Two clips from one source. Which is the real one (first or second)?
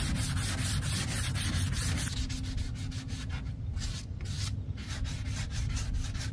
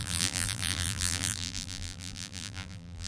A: first